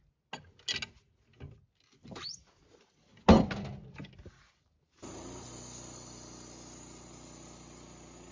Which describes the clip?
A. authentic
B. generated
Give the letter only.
A